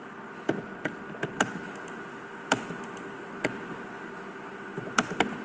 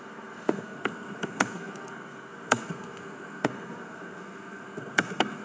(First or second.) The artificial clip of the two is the second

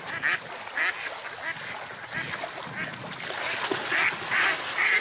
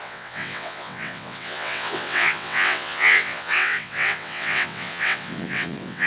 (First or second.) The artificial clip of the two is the second